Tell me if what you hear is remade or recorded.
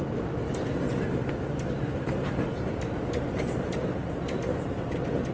recorded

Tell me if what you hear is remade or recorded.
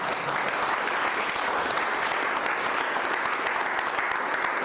recorded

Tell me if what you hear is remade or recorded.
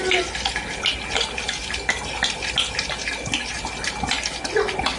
recorded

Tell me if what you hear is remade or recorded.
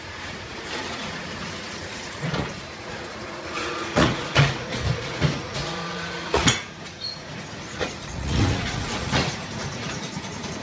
remade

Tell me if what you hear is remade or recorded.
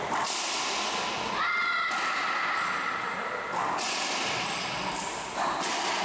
recorded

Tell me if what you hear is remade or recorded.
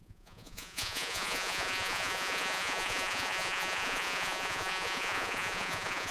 remade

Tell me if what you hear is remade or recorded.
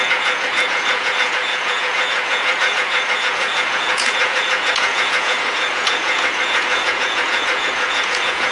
remade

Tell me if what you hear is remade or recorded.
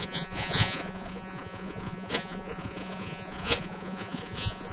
remade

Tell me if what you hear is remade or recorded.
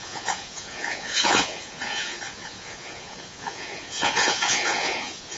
remade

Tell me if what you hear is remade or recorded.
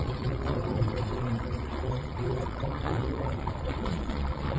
remade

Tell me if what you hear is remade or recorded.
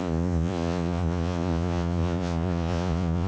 remade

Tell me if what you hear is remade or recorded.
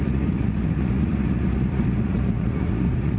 remade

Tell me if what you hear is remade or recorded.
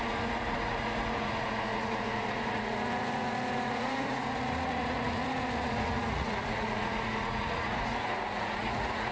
remade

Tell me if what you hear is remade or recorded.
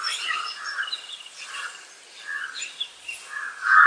recorded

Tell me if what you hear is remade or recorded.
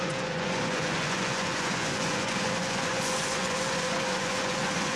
remade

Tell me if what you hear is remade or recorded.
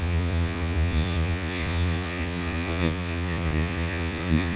remade